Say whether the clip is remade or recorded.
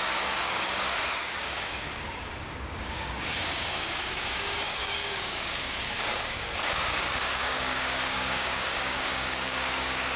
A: remade